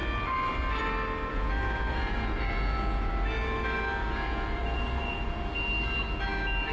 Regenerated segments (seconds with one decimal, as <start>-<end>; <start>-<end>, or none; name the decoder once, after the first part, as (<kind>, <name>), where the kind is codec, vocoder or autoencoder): 1.3-3.1 (vocoder, Vocos); 4.0-5.4